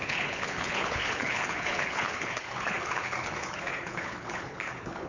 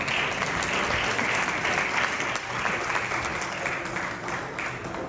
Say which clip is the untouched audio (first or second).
second